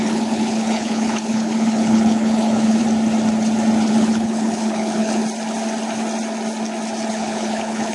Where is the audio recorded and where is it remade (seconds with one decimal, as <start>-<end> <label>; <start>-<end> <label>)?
0.0-2.8 remade; 2.8-3.9 recorded; 3.9-5.2 remade; 5.2-7.1 recorded; 7.1-7.9 remade